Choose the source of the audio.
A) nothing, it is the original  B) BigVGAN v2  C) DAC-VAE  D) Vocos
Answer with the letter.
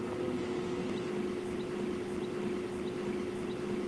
A